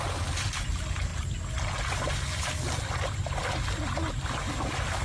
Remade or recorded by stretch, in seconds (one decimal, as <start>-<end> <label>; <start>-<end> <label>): 0.0-5.0 recorded